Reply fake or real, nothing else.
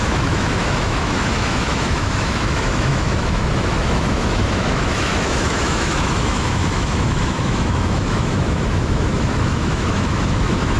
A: fake